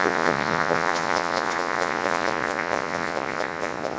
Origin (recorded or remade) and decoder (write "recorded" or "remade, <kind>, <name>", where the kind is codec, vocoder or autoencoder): remade, vocoder, Vocos